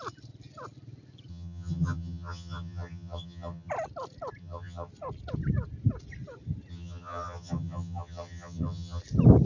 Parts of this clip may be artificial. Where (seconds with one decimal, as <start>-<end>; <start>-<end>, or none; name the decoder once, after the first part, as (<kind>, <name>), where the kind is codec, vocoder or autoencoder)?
1.3-3.7 (vocoder, HiFi-GAN); 4.4-4.9; 6.7-9.0